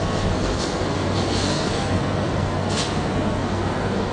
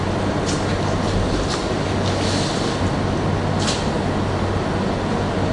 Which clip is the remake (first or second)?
first